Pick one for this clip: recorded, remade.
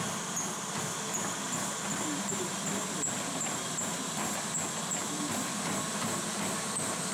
recorded